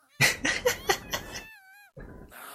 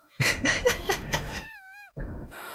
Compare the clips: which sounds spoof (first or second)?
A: second